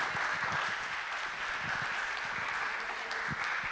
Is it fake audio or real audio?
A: real